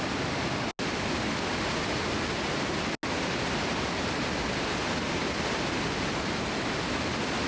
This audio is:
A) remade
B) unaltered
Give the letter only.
B